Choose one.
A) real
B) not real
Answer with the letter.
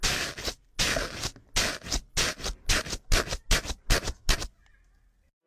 A